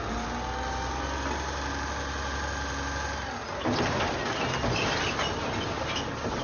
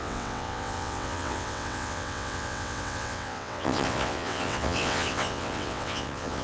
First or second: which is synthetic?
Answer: second